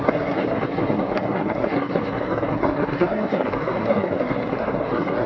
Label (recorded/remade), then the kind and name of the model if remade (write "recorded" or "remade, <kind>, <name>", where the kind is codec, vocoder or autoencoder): remade, codec, SNAC